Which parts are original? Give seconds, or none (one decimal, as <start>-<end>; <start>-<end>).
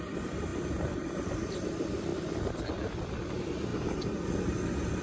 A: 0.0-5.0